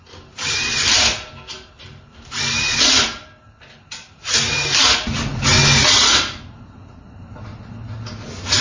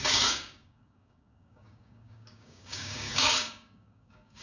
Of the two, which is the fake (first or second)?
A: second